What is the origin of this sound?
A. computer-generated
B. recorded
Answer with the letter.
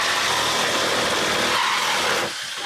B